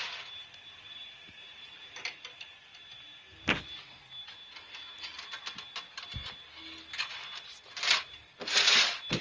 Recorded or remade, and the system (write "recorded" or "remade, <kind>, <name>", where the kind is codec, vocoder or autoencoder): recorded